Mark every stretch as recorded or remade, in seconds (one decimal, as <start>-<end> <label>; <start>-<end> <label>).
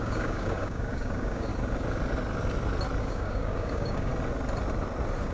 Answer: 0.0-1.5 remade; 1.5-3.0 recorded; 3.0-4.1 remade; 4.1-5.3 recorded